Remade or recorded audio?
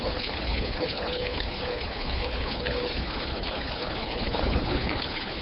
remade